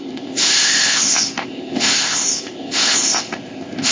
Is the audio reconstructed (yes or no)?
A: yes